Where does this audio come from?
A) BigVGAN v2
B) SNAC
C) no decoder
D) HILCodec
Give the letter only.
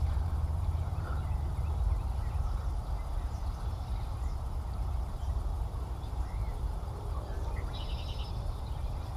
A